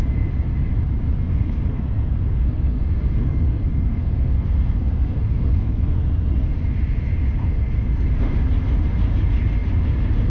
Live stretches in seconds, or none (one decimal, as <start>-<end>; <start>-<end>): 0.0-1.3; 6.0-7.4; 8.1-10.3